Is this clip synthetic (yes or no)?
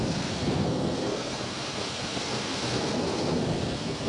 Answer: yes